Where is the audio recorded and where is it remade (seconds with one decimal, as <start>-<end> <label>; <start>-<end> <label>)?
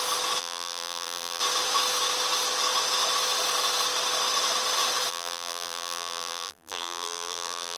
0.0-0.4 recorded; 0.4-1.4 remade; 1.4-5.1 recorded; 5.1-7.8 remade